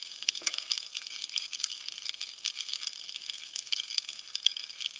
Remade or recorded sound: remade